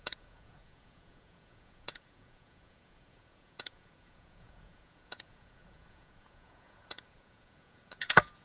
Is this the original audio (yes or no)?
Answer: no